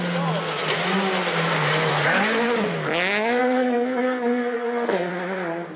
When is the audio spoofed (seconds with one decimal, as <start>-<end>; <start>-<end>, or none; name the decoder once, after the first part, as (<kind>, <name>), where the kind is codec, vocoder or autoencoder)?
3.4-5.1 (codec, SNAC)